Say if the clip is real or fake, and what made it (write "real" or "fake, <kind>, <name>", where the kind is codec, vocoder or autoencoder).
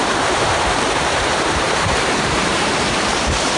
fake, vocoder, BigVGAN v2